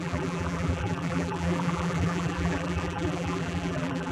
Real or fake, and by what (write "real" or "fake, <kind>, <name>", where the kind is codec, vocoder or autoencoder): fake, vocoder, BigVGAN v2